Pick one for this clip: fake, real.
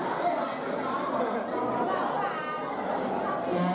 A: real